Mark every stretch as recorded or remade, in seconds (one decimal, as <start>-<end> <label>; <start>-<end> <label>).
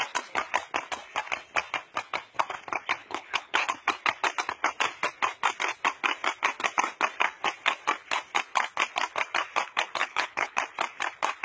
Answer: 0.0-3.0 recorded; 3.0-3.6 remade; 3.6-10.0 recorded; 10.0-10.6 remade; 10.6-11.4 recorded